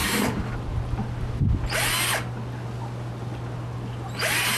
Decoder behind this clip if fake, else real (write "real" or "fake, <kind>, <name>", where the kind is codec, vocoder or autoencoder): real